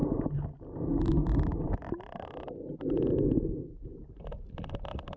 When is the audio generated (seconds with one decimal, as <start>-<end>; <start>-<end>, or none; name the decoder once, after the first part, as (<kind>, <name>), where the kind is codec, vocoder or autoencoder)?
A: none

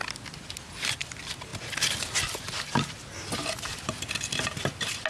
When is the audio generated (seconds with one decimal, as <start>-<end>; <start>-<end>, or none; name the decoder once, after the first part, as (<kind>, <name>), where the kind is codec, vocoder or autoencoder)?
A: none